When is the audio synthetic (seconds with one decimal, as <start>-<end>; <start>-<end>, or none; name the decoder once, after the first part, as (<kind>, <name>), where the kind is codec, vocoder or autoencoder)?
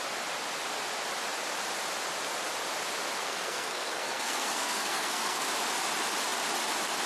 3.2-5.5 (codec, SNAC)